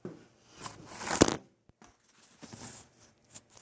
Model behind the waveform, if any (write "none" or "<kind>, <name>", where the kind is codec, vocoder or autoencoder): none